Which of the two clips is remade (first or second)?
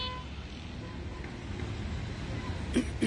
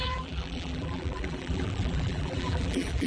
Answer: second